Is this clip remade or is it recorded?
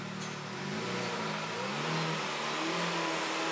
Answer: recorded